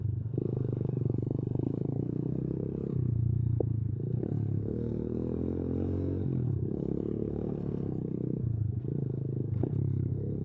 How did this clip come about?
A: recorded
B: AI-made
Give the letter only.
B